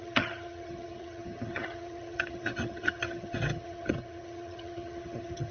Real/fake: fake